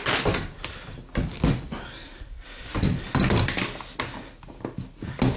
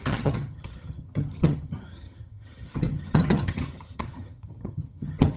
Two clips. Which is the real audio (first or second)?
first